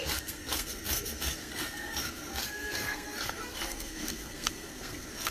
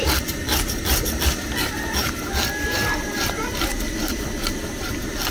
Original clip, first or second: second